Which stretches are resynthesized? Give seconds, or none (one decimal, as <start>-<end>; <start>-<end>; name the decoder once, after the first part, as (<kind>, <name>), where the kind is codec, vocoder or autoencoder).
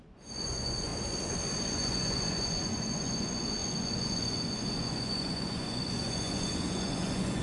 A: 0.0-0.9 (vocoder, Vocos); 1.6-7.4